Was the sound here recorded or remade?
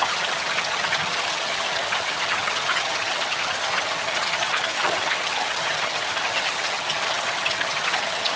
remade